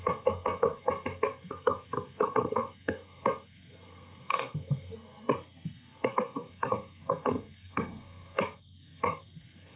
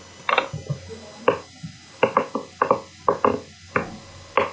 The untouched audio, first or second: second